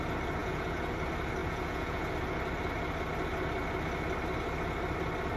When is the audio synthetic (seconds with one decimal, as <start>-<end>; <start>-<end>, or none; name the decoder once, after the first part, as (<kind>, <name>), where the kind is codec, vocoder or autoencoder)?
0.4-0.9 (vocoder, Vocos); 1.4-2.1